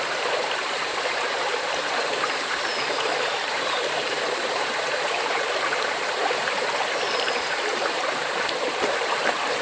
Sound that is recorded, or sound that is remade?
remade